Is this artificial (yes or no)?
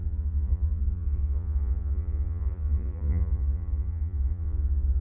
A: yes